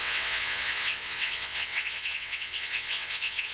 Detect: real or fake fake